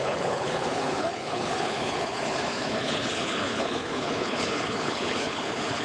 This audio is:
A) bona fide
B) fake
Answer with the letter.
B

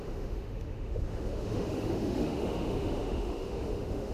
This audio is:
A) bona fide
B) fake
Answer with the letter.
B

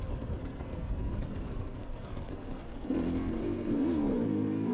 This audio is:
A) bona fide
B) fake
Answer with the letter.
B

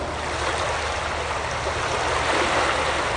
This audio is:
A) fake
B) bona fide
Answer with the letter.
B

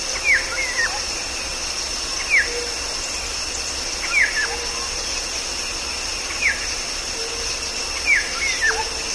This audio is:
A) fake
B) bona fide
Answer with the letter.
B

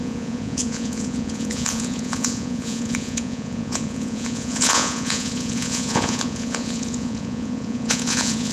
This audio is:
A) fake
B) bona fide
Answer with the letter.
A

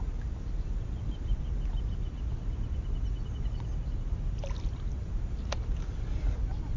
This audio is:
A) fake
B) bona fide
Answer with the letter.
B